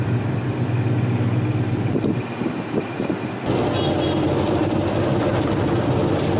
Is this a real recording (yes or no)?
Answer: yes